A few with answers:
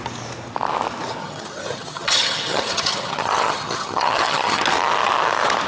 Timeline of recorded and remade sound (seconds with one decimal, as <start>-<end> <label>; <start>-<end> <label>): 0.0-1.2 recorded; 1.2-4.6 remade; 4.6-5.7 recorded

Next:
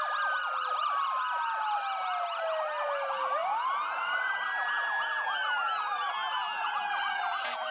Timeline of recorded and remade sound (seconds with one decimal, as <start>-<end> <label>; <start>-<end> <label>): 0.0-7.7 recorded

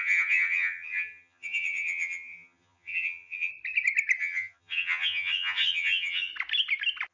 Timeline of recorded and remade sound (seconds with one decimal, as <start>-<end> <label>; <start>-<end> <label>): 0.0-3.5 remade; 3.5-4.2 recorded; 4.2-6.3 remade; 6.3-7.1 recorded